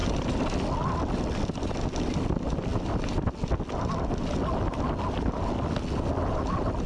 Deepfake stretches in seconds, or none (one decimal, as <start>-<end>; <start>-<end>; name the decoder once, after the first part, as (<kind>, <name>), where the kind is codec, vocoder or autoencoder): none